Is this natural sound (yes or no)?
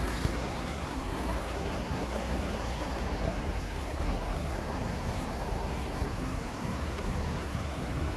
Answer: no